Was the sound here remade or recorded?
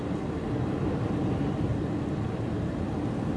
recorded